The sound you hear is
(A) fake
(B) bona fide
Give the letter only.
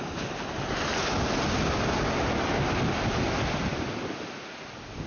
B